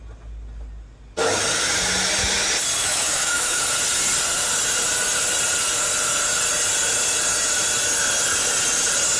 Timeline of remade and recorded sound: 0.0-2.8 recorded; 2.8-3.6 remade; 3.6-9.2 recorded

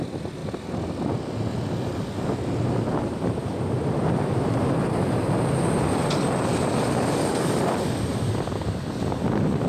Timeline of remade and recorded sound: 0.0-9.7 recorded